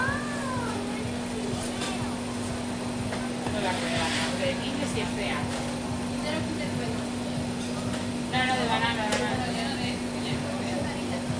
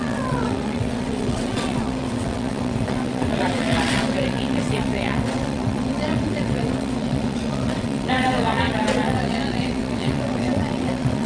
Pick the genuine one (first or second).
first